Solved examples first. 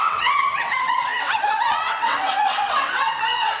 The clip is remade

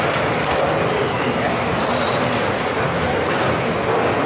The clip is recorded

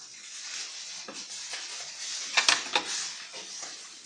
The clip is recorded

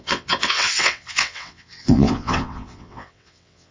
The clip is remade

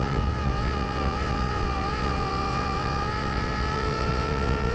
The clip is remade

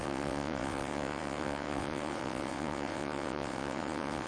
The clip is remade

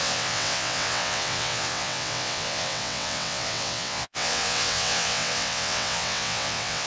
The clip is remade